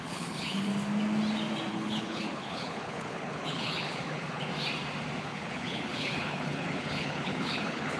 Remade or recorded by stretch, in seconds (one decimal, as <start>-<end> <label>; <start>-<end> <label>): 0.0-0.7 remade; 0.7-1.7 recorded; 1.7-4.5 remade; 4.5-5.2 recorded; 5.2-8.0 remade